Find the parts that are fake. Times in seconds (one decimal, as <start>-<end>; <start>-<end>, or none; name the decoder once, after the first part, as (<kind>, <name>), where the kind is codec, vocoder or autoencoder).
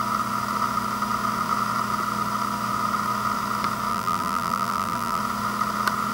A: 3.9-5.2 (vocoder, BigVGAN v2)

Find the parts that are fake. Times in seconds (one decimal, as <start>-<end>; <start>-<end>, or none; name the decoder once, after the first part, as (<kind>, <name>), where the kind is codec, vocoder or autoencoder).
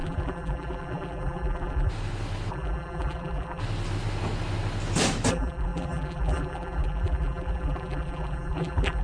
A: 0.0-1.9 (vocoder, BigVGAN v2); 2.5-3.6; 5.3-9.0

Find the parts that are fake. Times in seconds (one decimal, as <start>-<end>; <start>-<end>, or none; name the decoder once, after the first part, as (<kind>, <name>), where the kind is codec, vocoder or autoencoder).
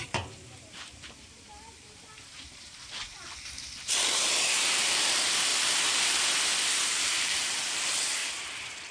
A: 0.0-5.5 (vocoder, BigVGAN v2); 7.0-8.2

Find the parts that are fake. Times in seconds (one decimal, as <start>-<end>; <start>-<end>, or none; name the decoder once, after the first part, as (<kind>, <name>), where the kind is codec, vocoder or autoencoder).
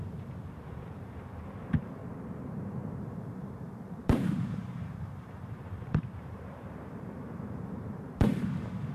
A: 0.0-2.0 (vocoder, BigVGAN v2); 3.0-8.9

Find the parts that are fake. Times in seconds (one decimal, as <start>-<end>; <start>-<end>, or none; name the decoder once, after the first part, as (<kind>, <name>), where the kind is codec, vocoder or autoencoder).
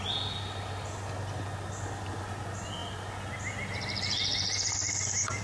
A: none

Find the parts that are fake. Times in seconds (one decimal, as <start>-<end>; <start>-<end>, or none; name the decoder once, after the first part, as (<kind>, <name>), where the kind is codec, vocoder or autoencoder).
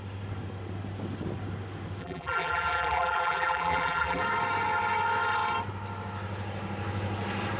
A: 2.0-4.2 (vocoder, BigVGAN v2)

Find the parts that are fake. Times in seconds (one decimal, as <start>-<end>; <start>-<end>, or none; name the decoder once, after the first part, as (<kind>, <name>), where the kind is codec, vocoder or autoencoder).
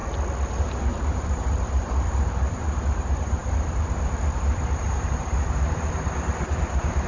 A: 0.5-7.1 (vocoder, BigVGAN v2)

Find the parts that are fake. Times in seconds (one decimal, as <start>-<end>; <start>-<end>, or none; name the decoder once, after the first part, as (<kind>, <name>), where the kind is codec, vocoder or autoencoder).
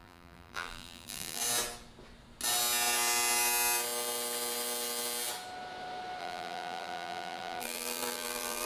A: 0.0-1.4 (vocoder, BigVGAN v2); 6.2-8.7